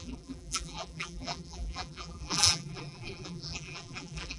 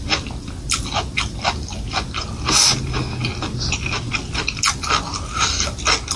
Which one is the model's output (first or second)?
first